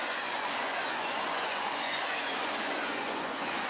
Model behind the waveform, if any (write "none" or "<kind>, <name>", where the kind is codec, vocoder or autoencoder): vocoder, Vocos